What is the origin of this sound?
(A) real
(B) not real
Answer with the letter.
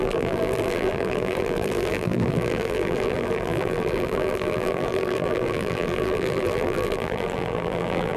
B